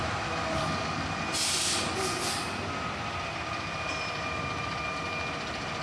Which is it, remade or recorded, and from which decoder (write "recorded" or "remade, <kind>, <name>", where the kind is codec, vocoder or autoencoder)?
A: recorded